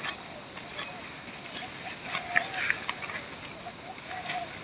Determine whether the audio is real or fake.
real